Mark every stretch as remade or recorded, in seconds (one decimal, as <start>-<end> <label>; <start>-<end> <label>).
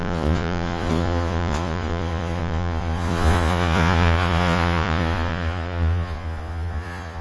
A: 0.0-7.2 remade